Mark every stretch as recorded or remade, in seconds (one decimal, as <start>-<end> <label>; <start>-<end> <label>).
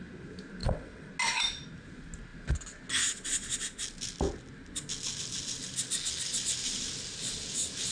0.0-0.6 recorded; 0.6-1.1 remade; 1.1-7.9 recorded